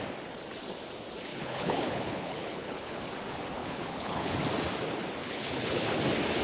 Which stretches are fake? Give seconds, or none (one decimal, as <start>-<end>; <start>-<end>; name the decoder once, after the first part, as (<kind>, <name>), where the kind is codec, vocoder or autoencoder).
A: 1.3-3.0 (codec, HILCodec); 3.6-4.3; 5.2-6.0